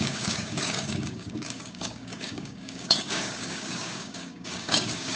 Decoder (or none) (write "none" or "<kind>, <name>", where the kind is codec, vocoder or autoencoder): codec, DAC